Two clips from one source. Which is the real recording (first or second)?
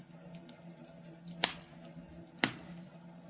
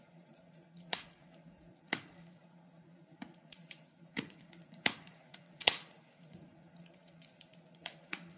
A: first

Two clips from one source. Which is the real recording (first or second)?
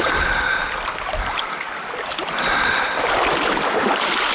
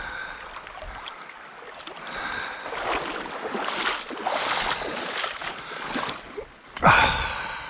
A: second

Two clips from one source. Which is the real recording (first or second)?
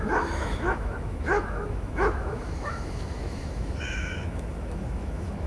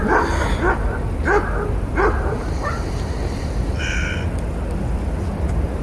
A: second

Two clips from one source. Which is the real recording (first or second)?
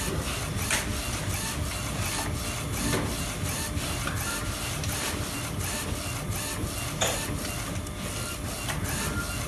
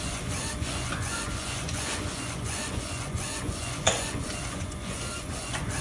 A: first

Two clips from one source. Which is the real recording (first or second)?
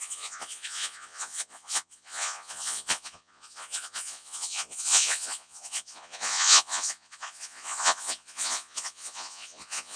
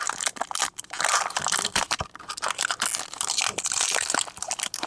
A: second